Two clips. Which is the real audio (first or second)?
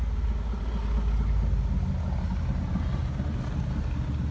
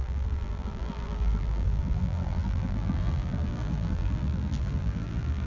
first